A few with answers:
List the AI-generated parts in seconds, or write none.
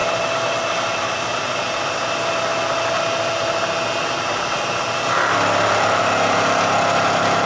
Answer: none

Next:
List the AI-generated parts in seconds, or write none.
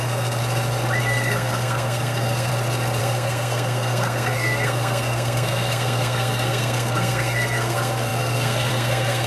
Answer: 0.0-0.4; 1.0-2.5; 3.0-9.3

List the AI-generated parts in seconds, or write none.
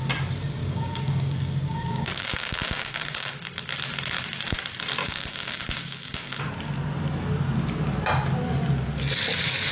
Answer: 0.6-3.3; 5.0-6.5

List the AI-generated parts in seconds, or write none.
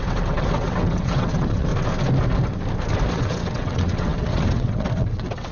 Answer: 0.0-1.7; 3.1-5.5